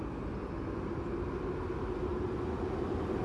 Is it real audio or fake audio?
real